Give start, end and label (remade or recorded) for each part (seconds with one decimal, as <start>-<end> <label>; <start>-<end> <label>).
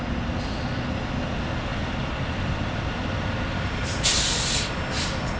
0.0-5.4 recorded